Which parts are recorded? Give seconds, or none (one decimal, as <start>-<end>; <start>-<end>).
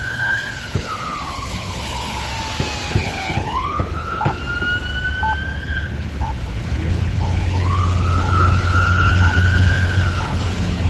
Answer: 2.3-2.9; 4.4-5.6